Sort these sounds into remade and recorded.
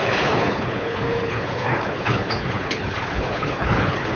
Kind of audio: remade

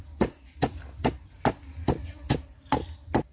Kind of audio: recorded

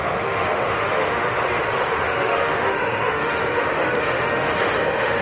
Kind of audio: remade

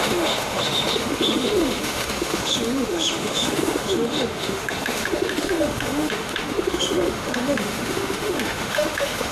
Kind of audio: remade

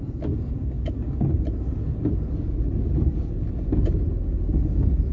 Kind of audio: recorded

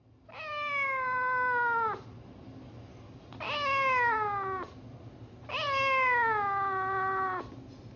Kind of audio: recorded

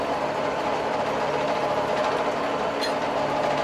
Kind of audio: recorded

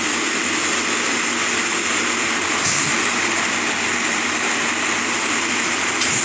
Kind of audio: recorded